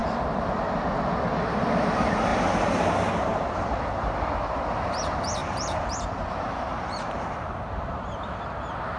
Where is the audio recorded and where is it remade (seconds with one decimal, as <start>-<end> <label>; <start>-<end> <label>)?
0.0-2.3 recorded; 2.3-2.9 remade; 2.9-3.3 recorded; 3.3-4.3 remade; 4.3-5.4 recorded; 5.4-8.6 remade; 8.6-9.0 recorded